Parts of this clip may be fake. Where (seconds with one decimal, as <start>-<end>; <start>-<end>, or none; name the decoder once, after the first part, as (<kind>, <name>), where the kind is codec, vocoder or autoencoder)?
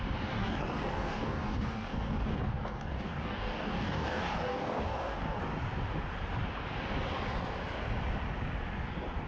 0.4-5.4 (codec, DAC)